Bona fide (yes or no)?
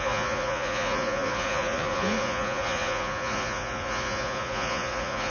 no